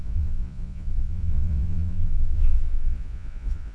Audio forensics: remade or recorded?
remade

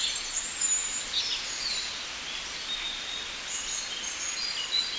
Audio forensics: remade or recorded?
recorded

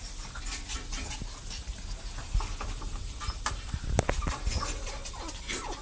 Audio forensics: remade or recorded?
recorded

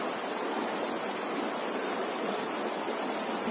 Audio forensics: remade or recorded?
recorded